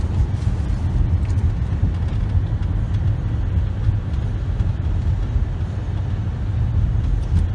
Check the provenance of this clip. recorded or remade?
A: recorded